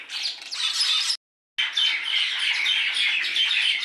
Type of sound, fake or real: real